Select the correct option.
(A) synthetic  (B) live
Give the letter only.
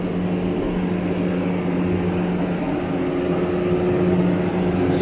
B